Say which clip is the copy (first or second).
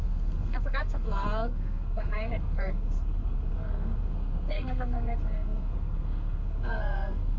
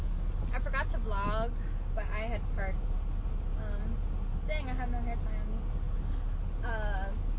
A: first